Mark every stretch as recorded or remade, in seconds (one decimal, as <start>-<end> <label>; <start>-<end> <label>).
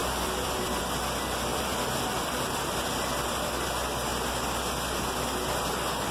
0.0-0.8 remade; 0.8-1.5 recorded; 1.5-3.6 remade; 3.6-6.1 recorded